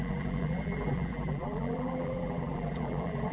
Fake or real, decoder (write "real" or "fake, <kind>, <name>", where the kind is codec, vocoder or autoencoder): fake, vocoder, BigVGAN v2